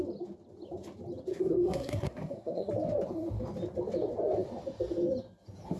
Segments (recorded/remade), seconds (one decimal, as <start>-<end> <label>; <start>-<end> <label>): 0.0-1.3 recorded; 1.3-2.7 remade; 2.7-5.8 recorded